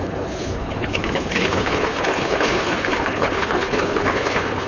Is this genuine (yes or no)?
no